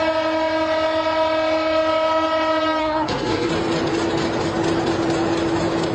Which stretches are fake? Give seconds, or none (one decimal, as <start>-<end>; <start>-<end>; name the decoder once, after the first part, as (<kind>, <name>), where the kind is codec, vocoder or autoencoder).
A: 2.8-3.5 (codec, SNAC)